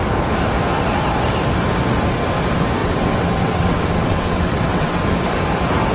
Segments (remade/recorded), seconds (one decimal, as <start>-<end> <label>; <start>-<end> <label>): 0.0-2.8 recorded; 2.8-5.0 remade; 5.0-5.9 recorded